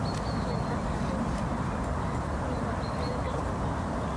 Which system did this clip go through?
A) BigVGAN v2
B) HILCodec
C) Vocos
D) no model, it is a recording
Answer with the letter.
D